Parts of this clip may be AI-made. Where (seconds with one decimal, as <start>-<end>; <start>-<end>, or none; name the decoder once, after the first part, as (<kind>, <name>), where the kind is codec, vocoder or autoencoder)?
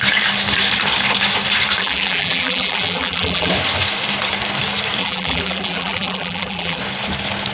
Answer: 1.8-3.5 (vocoder, BigVGAN v2); 5.0-6.8